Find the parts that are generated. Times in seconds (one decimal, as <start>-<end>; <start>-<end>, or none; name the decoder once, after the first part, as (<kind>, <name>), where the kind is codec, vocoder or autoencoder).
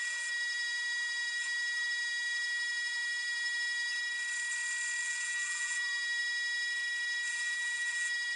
0.0-3.9 (vocoder, BigVGAN v2); 5.0-6.2; 7.3-8.4